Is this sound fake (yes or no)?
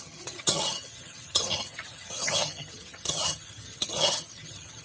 yes